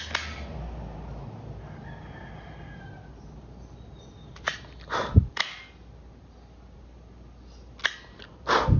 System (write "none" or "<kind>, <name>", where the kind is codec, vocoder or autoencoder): none